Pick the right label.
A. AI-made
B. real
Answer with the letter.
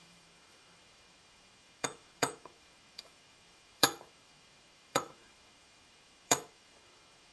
A